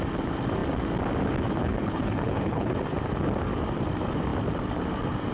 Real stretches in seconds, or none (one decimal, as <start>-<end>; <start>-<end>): 0.0-1.6; 2.8-5.3